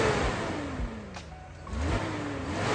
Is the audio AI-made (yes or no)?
no